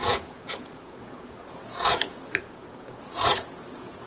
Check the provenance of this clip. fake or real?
fake